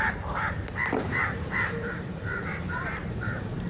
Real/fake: fake